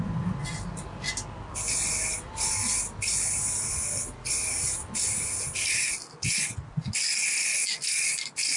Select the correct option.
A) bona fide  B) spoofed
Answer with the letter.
A